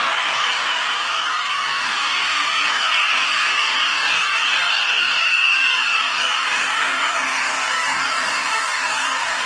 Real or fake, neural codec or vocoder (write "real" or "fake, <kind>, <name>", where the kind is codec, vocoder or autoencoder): fake, codec, DAC